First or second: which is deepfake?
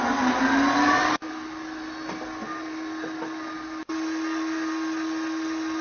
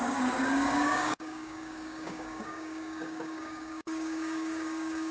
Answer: second